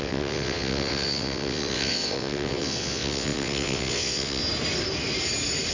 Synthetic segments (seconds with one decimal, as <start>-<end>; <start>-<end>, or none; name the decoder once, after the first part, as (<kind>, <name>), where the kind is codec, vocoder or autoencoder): 0.0-4.4 (vocoder, WaveNeXt)